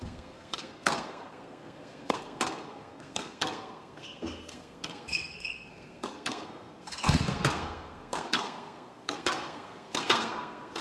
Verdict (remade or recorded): remade